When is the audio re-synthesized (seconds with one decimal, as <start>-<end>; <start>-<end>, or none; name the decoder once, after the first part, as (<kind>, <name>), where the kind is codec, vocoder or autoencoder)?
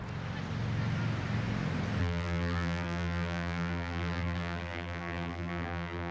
2.0-6.1 (vocoder, BigVGAN v2)